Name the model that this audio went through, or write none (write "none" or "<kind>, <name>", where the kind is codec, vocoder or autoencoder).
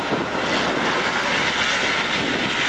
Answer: none